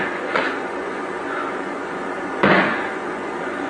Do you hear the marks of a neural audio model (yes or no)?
yes